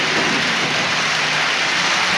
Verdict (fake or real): real